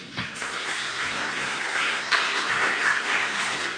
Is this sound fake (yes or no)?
yes